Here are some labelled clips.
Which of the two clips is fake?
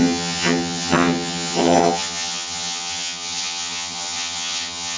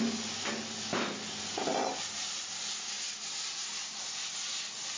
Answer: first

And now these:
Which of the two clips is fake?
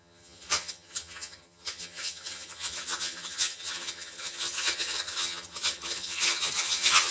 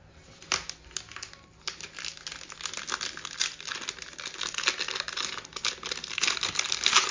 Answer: first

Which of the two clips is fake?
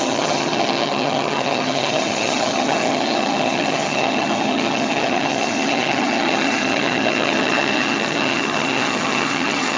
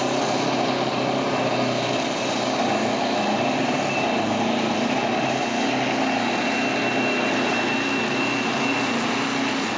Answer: first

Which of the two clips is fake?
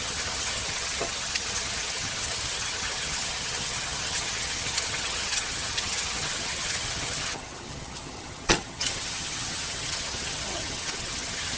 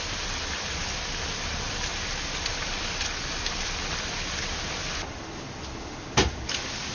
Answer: first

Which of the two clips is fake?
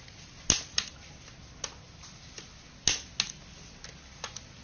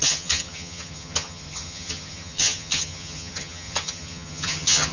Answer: second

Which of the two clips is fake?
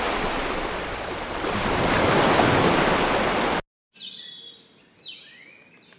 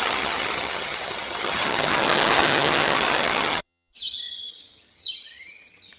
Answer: second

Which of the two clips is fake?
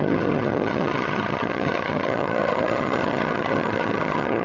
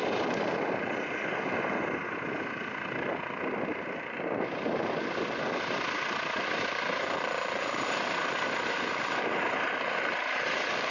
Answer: first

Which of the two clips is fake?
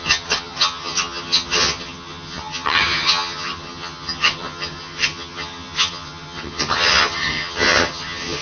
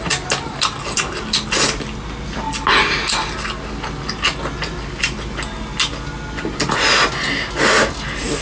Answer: first